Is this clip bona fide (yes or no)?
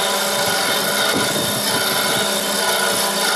yes